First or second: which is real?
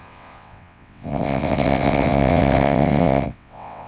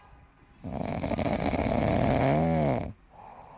second